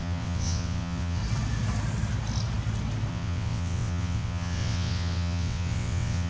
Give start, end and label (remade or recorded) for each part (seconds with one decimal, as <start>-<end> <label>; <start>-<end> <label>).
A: 0.0-1.2 remade; 1.2-3.1 recorded; 3.1-6.3 remade